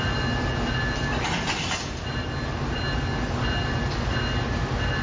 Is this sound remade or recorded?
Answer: recorded